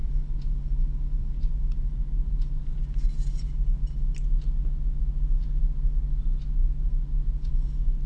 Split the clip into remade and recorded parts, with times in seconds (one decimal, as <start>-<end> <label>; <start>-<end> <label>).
0.0-1.2 recorded; 1.2-2.3 remade; 2.3-8.1 recorded